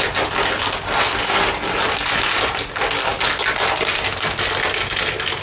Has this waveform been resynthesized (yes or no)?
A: no